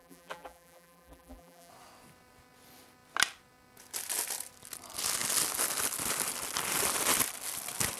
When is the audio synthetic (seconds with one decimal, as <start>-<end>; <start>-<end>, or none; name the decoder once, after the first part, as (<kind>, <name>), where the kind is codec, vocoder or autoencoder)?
0.0-1.7 (vocoder, BigVGAN v2)